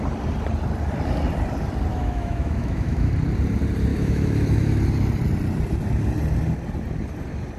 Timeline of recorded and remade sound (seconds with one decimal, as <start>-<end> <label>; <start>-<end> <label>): 0.0-1.9 recorded; 1.9-3.1 remade; 3.1-3.9 recorded; 3.9-4.7 remade; 4.7-7.6 recorded